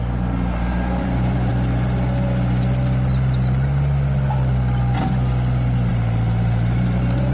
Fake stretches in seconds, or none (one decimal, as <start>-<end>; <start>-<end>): 0.0-1.5; 5.9-7.3